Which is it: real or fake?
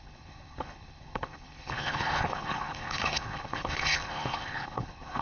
fake